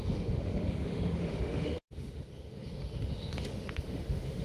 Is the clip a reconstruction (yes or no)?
yes